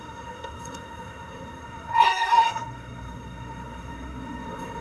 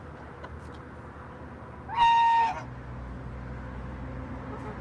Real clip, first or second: second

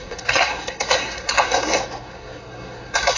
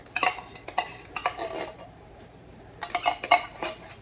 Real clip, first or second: second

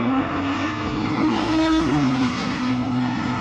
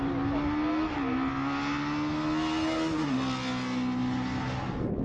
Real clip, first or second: second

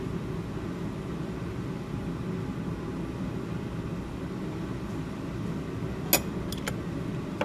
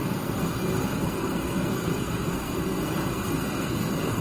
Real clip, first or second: first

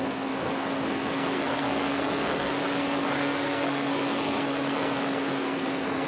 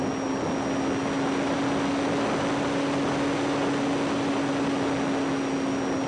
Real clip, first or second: second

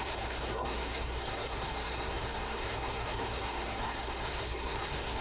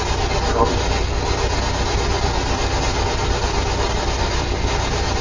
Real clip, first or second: second